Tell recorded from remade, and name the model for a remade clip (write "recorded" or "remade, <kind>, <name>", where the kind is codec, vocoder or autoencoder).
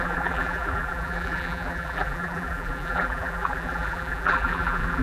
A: remade, vocoder, BigVGAN v2